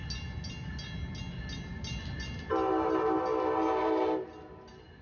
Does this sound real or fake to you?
real